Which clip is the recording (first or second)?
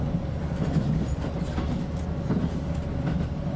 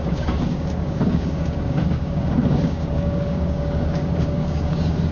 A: first